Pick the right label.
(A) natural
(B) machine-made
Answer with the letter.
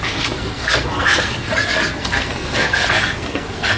B